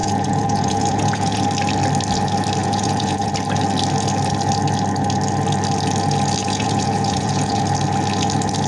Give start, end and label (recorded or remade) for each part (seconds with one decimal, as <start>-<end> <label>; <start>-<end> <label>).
0.0-1.4 remade; 1.4-2.6 recorded; 2.6-3.3 remade; 3.3-6.4 recorded; 6.4-7.6 remade; 7.6-8.7 recorded